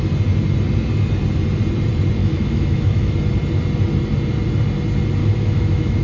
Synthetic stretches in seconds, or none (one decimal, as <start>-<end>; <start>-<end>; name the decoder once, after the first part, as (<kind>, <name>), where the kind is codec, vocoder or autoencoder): 2.2-3.2 (autoencoder, DAC-VAE); 5.2-6.0